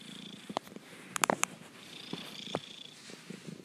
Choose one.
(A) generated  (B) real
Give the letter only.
A